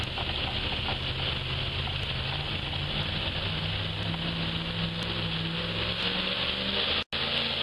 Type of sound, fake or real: real